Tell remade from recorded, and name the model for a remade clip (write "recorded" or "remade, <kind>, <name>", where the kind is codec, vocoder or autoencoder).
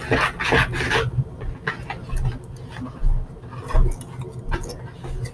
recorded